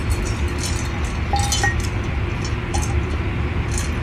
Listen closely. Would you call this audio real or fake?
real